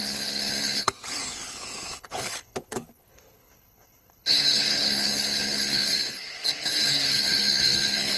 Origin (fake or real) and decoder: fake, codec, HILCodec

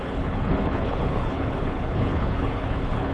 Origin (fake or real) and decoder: fake, codec, HILCodec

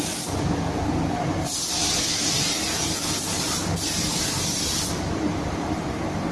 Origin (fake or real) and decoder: real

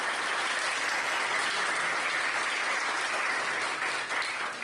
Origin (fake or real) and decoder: real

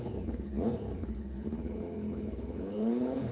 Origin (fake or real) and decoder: fake, codec, HILCodec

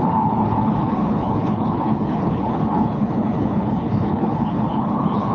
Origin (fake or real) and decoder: fake, codec, HILCodec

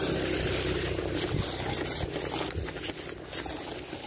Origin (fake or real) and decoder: real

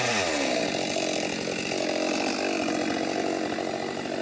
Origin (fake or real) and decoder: real